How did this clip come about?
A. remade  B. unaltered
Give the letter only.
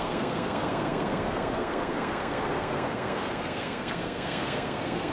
A